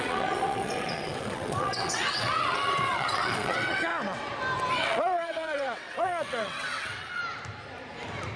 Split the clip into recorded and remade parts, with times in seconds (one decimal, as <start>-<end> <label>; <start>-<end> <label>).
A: 0.0-3.9 remade; 3.9-4.7 recorded; 4.7-7.2 remade; 7.2-8.4 recorded